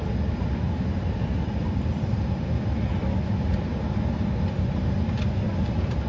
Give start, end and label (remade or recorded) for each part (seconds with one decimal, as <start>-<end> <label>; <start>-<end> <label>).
0.0-3.7 remade; 3.7-6.1 recorded